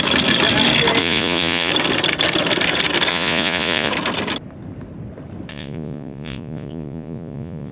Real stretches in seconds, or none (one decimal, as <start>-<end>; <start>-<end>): 0.0-1.0; 1.7-3.1; 3.9-5.5